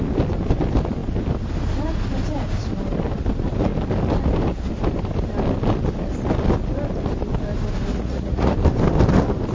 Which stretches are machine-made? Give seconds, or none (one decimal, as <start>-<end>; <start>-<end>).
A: 7.9-8.5